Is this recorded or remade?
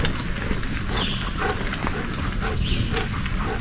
recorded